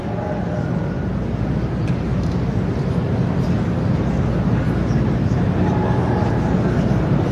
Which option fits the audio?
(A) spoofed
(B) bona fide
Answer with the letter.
B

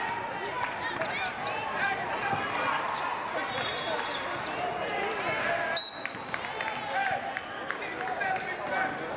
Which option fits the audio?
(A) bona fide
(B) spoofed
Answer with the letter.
A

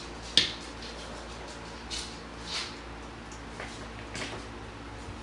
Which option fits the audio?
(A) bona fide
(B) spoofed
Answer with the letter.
A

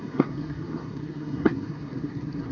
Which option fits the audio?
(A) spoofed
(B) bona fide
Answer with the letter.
A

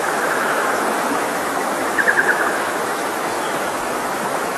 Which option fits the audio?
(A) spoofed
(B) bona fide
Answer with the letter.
A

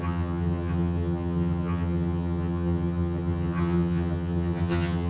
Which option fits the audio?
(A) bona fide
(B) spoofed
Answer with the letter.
B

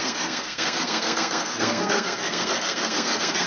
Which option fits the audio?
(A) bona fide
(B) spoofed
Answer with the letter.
B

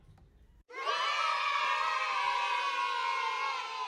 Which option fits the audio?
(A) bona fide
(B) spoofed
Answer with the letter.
A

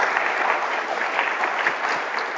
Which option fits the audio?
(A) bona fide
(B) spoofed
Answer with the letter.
A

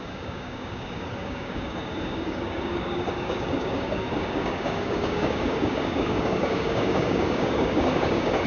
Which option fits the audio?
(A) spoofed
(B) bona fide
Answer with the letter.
A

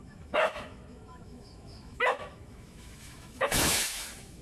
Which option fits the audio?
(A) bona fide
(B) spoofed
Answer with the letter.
B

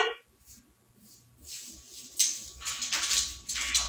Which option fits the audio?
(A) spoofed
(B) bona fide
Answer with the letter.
B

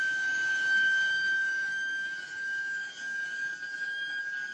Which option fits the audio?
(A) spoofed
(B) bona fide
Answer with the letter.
A